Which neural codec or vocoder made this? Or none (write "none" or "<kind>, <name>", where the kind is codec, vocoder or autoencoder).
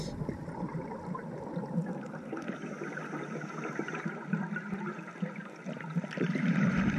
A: vocoder, BigVGAN v2